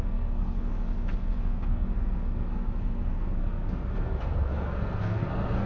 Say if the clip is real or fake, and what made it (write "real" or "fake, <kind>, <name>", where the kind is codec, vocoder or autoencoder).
fake, codec, SNAC